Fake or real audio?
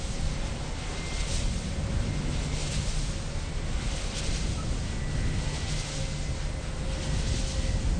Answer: real